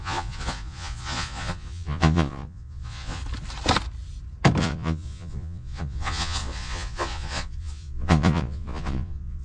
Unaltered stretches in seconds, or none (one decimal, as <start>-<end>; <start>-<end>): 3.2-4.6